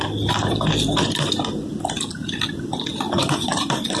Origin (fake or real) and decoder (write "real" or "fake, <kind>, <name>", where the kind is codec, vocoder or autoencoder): real